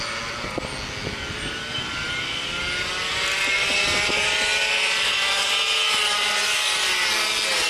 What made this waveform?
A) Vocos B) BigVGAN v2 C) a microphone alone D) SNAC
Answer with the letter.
C